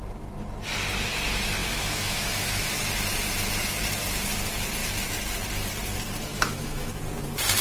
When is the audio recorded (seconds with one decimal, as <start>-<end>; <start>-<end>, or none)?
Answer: 0.0-1.6; 2.7-6.3; 7.0-7.6